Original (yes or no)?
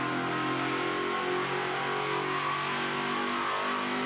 yes